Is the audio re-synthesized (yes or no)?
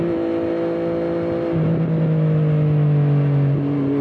no